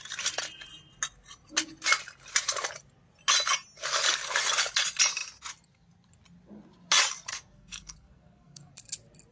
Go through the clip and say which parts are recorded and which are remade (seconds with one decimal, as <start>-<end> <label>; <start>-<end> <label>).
0.0-7.3 recorded; 7.3-8.7 remade; 8.7-9.3 recorded